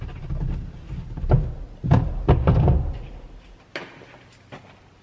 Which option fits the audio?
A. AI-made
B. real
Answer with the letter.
B